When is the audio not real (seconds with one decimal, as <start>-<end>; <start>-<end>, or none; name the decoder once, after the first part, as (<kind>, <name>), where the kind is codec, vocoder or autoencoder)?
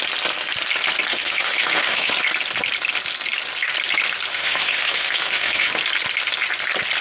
1.1-2.1 (autoencoder, DAC-VAE); 4.3-5.7